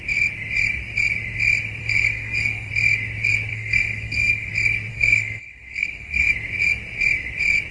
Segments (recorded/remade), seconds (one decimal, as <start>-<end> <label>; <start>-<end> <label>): 0.0-1.8 recorded; 1.8-2.7 remade; 2.7-3.5 recorded; 3.5-4.5 remade; 4.5-4.9 recorded; 4.9-6.3 remade; 6.3-7.7 recorded